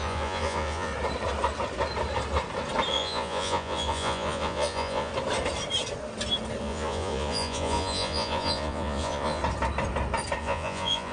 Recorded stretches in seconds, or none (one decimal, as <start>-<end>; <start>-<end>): 0.9-2.9; 5.1-6.6; 9.4-10.4